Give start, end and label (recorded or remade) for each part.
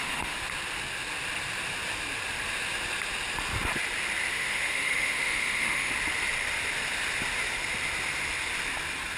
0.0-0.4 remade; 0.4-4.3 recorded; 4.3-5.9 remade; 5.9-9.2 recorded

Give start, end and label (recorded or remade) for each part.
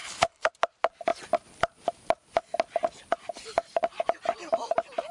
0.0-0.5 remade; 0.5-5.1 recorded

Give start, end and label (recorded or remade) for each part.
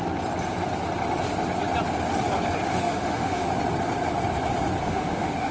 0.0-2.7 recorded; 2.7-3.5 remade; 3.5-4.8 recorded; 4.8-5.5 remade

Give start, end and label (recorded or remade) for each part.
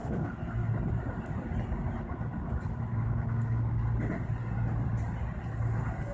0.0-0.7 remade; 0.7-3.0 recorded; 3.0-3.6 remade; 3.6-6.1 recorded